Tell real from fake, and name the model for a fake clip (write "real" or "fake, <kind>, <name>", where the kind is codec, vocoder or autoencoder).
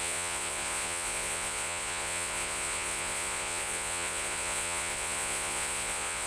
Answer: fake, vocoder, Vocos